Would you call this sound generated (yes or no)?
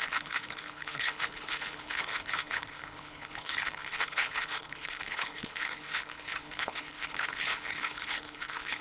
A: yes